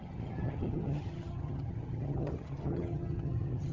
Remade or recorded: remade